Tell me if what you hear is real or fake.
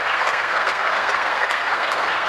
fake